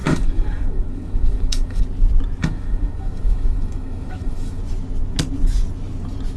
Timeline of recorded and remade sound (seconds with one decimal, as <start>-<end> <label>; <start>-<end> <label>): 0.0-1.8 remade; 1.8-2.4 recorded; 2.4-4.6 remade; 4.6-6.4 recorded